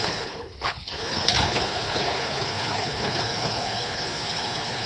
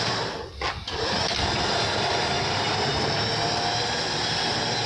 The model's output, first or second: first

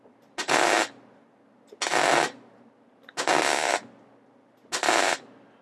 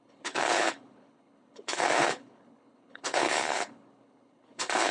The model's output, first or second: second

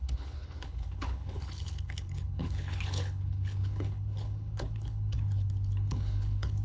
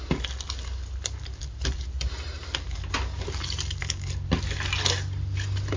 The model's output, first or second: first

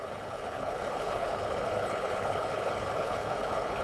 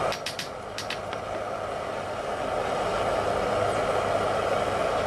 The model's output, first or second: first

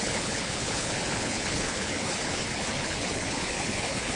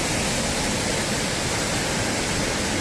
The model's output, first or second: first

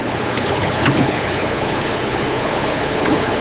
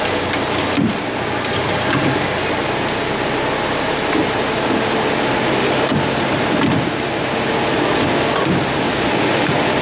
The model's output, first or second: first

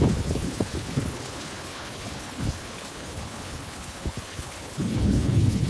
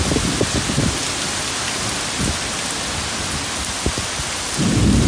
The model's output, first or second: first